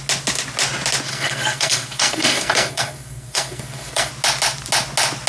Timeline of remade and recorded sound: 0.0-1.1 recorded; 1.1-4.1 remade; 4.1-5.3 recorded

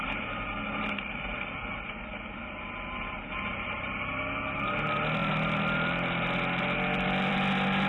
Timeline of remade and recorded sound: 0.0-7.9 recorded

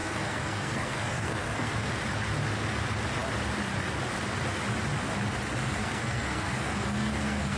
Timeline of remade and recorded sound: 0.0-1.9 remade; 1.9-5.8 recorded; 5.8-7.6 remade

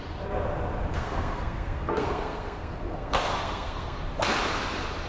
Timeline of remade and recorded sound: 0.0-0.9 recorded; 0.9-4.0 remade; 4.0-5.1 recorded

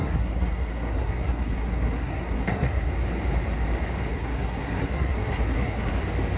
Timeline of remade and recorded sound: 0.0-2.9 remade; 2.9-4.1 recorded; 4.1-5.9 remade; 5.9-6.4 recorded

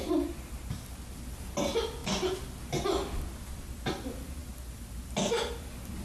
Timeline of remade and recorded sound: 0.0-6.0 recorded